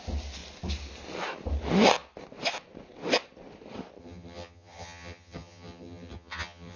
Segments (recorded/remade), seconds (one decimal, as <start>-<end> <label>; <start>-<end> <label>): 0.0-4.0 recorded; 4.0-6.8 remade